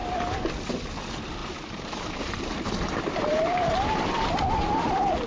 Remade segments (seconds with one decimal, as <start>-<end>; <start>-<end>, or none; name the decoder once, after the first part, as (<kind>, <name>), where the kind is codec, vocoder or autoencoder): 1.4-4.3 (vocoder, BigVGAN v2)